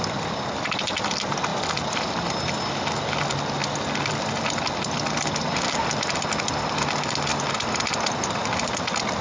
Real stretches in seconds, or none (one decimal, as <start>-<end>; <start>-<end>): 0.0-7.3; 8.5-9.2